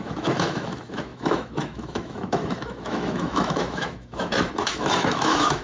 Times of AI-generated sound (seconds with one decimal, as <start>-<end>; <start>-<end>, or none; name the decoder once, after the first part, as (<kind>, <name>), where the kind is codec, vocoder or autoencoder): 0.0-5.6 (autoencoder, DAC-VAE)

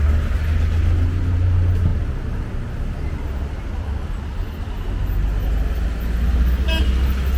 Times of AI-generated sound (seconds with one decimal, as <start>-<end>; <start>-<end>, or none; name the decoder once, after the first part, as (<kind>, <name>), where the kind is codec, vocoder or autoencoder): none

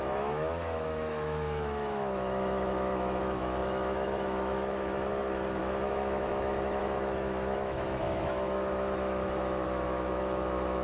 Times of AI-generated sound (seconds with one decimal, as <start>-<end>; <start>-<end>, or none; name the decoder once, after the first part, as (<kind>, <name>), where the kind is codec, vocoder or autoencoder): 0.0-5.1 (autoencoder, DAC-VAE); 5.6-10.8

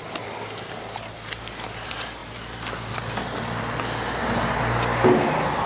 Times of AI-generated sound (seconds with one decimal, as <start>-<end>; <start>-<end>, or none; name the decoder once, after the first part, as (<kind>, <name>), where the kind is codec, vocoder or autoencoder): none

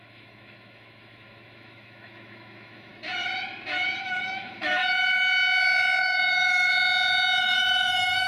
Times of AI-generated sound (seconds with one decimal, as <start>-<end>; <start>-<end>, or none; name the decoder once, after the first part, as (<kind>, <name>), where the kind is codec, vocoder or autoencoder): 0.0-2.9 (autoencoder, DAC-VAE); 4.0-4.8; 6.0-6.7; 7.4-8.3

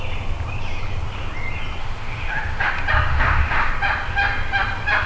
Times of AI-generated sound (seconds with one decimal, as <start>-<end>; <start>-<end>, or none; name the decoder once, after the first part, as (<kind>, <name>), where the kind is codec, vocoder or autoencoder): 1.8-2.7 (autoencoder, DAC-VAE); 3.1-3.7

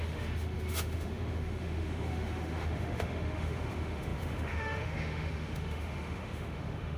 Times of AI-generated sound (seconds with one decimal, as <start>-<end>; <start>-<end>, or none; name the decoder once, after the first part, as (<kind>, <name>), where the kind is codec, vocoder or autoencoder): 0.0-7.0 (autoencoder, DAC-VAE)